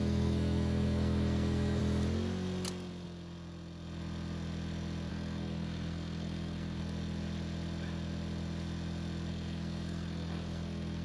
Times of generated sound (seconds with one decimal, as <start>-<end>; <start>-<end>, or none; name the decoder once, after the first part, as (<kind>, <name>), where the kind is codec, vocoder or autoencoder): 0.0-1.8 (codec, SNAC); 5.1-6.8; 9.3-11.0